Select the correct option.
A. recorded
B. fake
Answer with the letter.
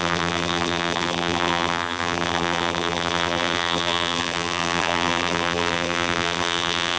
B